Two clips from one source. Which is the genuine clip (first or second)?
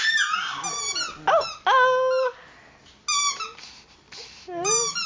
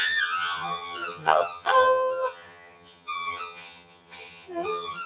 first